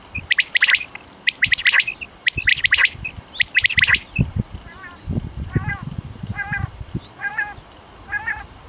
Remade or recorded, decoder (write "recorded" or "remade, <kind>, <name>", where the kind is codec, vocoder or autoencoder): recorded